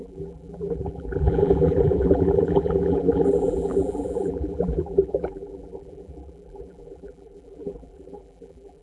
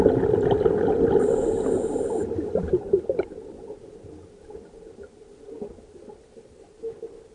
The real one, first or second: second